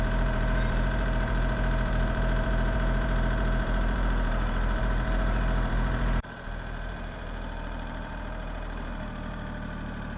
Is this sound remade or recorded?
remade